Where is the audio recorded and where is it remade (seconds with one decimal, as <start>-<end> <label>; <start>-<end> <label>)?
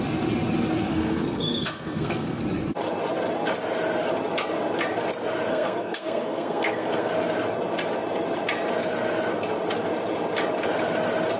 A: 0.0-0.9 recorded; 0.9-2.4 remade; 2.4-5.5 recorded; 5.5-7.1 remade; 7.1-11.4 recorded